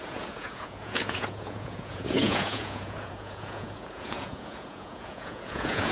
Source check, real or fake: fake